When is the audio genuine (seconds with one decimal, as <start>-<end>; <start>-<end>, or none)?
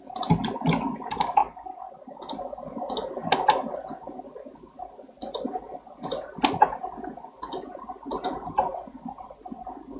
0.0-8.7; 9.4-10.0